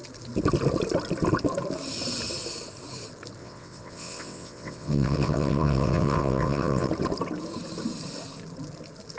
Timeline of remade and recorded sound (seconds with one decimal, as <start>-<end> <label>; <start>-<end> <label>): 0.0-3.4 recorded; 3.4-6.9 remade; 6.9-9.2 recorded